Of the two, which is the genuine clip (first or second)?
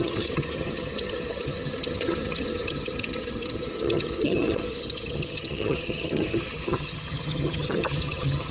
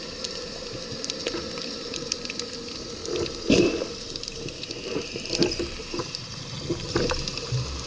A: second